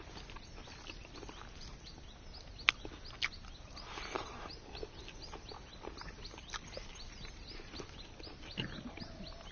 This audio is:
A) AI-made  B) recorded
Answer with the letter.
B